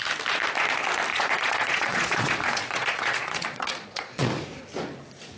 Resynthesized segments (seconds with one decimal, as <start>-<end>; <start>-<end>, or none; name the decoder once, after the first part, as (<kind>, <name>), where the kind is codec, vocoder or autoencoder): 1.1-4.3 (vocoder, Vocos)